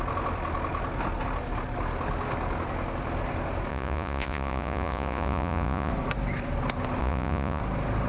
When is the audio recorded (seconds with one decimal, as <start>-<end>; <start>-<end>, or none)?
0.0-3.7; 5.9-7.0; 7.6-8.1

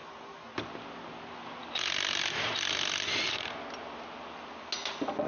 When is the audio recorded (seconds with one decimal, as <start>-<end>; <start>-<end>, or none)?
0.0-5.3